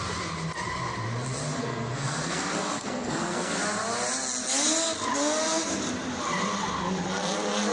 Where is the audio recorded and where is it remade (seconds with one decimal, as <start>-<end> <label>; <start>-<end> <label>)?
0.0-1.6 recorded; 1.6-3.6 remade; 3.6-7.7 recorded

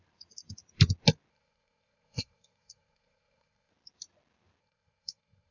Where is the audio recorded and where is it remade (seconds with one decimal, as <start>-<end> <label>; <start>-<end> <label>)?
0.0-1.3 recorded; 1.3-3.7 remade; 3.7-4.6 recorded; 4.6-5.5 remade

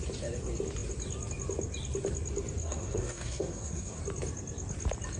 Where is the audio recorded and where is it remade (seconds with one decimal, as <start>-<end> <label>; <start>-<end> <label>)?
0.0-2.6 recorded; 2.6-4.0 remade; 4.0-5.2 recorded

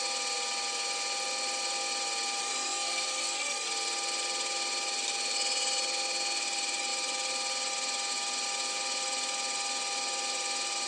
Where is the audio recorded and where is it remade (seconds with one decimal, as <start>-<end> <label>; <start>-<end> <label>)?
0.0-2.4 recorded; 2.4-3.7 remade; 3.7-10.9 recorded

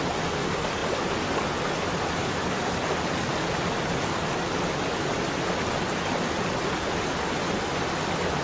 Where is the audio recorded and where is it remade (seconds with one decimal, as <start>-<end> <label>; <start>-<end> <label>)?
0.0-8.4 recorded

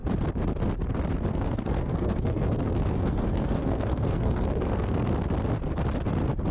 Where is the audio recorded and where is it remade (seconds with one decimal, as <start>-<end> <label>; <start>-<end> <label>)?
0.0-1.3 recorded; 1.3-5.1 remade; 5.1-6.5 recorded